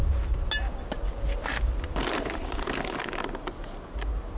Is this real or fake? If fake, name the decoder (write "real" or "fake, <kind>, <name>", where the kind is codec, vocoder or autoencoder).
real